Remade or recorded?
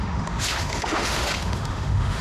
remade